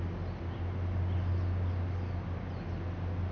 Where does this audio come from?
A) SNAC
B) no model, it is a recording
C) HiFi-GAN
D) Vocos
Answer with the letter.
B